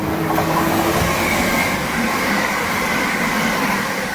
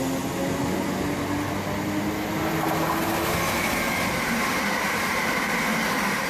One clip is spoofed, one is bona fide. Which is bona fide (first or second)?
second